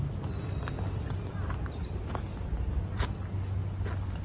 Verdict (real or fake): real